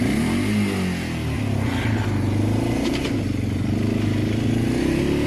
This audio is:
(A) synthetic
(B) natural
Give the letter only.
B